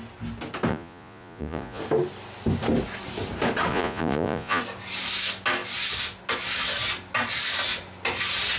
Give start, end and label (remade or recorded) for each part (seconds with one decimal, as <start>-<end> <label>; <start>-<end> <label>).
0.0-0.7 recorded; 0.7-1.8 remade; 1.8-3.7 recorded; 3.7-4.6 remade; 4.6-8.6 recorded